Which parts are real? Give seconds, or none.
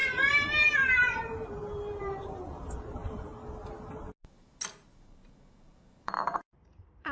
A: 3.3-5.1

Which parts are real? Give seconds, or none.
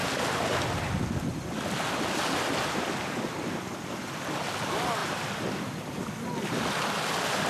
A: 0.0-7.5